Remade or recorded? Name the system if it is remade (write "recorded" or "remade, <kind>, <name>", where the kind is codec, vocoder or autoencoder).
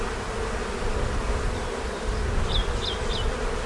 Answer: remade, vocoder, BigVGAN v2